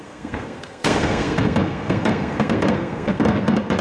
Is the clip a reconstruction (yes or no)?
yes